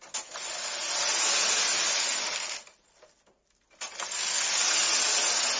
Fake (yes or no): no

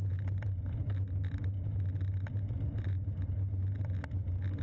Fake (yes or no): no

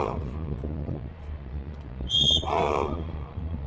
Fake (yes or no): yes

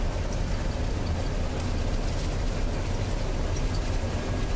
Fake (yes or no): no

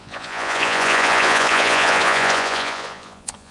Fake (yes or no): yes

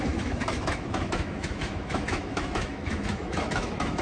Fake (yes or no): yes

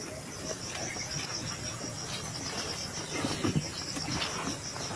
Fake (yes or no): no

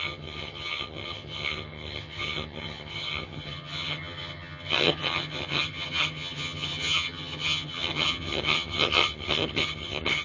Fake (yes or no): yes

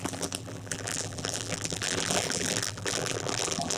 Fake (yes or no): yes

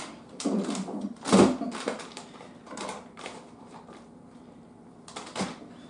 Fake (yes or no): yes